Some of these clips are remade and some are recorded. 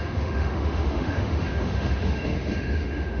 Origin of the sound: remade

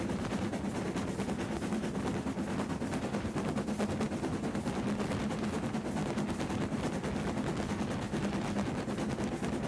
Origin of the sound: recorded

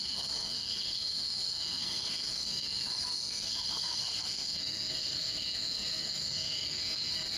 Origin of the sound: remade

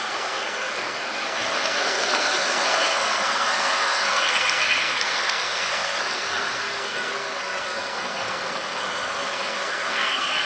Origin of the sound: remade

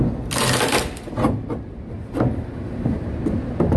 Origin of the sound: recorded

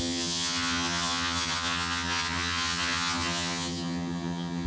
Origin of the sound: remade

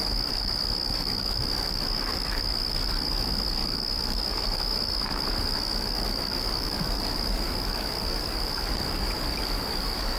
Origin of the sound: remade